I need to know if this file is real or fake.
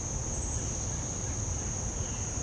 real